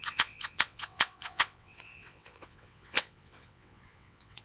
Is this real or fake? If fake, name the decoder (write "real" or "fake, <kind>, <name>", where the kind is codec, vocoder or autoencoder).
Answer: fake, vocoder, WaveNeXt